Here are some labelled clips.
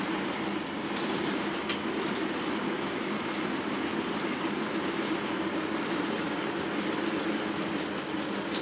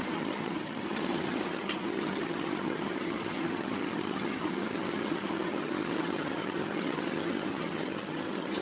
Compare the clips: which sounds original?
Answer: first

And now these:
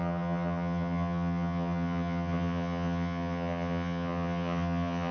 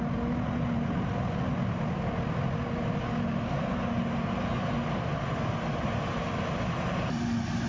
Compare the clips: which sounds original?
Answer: second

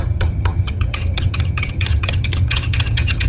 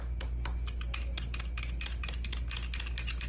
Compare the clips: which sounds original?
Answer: second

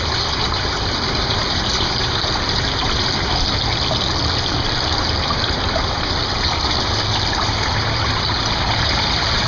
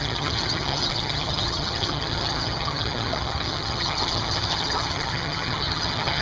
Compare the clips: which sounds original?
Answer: first